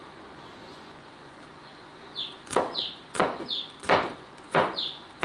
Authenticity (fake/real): fake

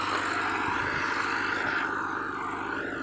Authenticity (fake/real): real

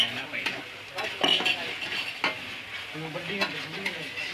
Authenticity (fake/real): real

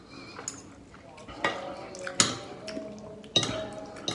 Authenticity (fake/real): real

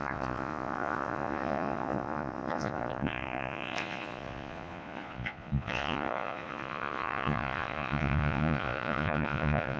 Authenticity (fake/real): fake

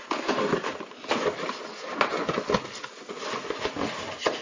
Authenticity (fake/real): real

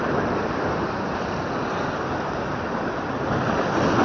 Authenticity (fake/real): real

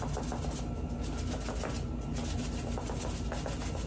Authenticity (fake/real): real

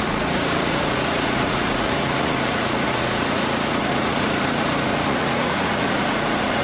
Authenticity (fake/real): fake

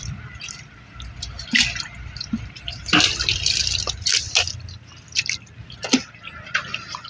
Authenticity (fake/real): real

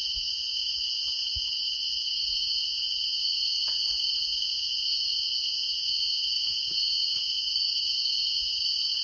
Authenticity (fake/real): fake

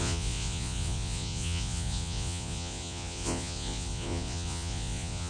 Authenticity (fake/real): fake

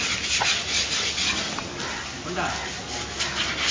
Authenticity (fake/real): real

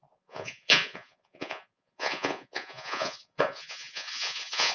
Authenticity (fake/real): fake